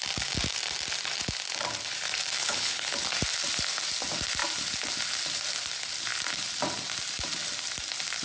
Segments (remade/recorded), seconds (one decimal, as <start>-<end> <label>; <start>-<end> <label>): 0.0-2.4 recorded; 2.4-3.0 remade; 3.0-8.2 recorded